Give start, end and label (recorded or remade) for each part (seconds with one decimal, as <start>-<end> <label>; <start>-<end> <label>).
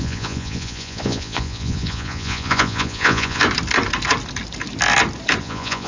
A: 0.0-3.4 remade; 3.4-5.4 recorded; 5.4-5.9 remade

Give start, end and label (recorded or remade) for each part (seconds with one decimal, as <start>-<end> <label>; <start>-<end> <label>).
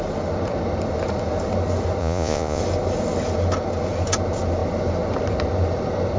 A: 0.0-2.0 recorded; 2.0-2.6 remade; 2.6-6.2 recorded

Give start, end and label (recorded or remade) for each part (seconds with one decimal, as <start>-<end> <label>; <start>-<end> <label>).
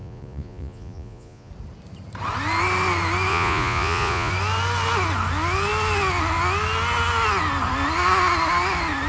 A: 0.0-1.5 remade; 1.5-3.3 recorded; 3.3-4.3 remade; 4.3-9.1 recorded